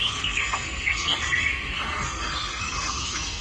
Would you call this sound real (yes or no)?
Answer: no